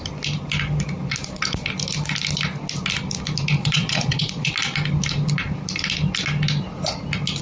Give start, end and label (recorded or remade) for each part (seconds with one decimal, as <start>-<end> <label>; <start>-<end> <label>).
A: 0.0-3.6 recorded; 3.6-4.5 remade; 4.5-7.4 recorded